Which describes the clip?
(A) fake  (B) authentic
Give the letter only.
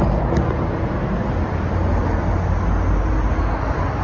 B